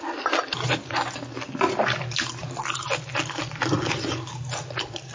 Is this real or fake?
real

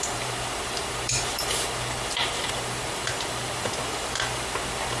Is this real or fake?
fake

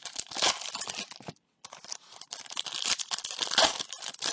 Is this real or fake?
real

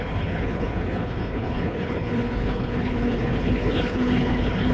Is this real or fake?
fake